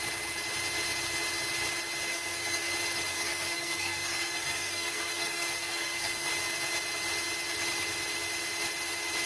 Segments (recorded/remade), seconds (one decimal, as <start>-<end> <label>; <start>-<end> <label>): 0.0-2.1 recorded; 2.1-2.7 remade; 2.7-3.1 recorded; 3.1-6.3 remade; 6.3-9.3 recorded